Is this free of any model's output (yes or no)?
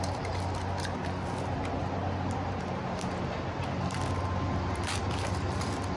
yes